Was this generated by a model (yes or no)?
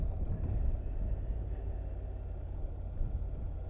no